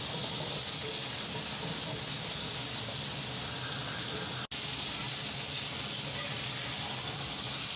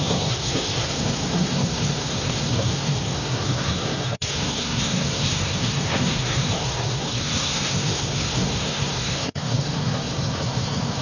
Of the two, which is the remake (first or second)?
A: second